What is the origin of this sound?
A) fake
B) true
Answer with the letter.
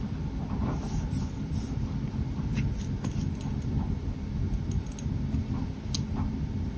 B